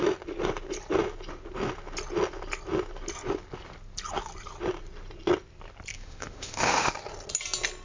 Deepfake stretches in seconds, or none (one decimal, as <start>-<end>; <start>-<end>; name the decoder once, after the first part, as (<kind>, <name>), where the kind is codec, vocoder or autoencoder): 5.9-6.9 (autoencoder, DAC-VAE)